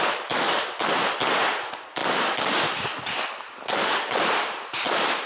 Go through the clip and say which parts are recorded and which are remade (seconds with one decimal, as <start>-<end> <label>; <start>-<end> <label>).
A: 0.0-5.3 recorded